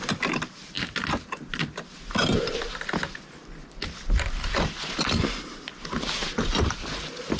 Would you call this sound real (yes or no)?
yes